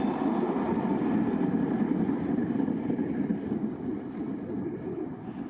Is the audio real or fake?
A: real